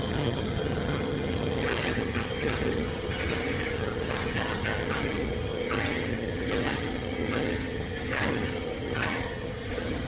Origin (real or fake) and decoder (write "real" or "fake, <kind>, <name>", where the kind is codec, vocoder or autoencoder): fake, vocoder, HiFi-GAN